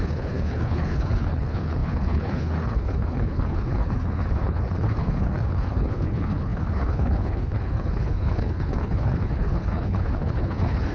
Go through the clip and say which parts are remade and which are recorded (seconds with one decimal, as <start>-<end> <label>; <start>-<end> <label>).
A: 0.0-10.9 remade